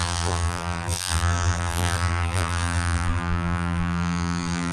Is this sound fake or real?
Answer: fake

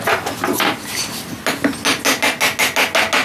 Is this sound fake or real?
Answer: real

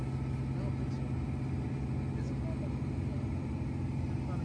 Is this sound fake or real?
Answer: real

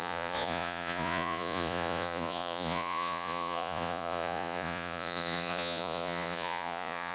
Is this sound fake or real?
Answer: fake